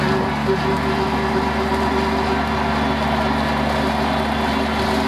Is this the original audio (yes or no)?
yes